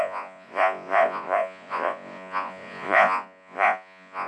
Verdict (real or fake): fake